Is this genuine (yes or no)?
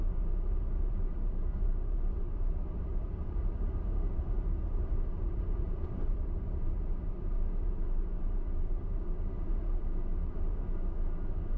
no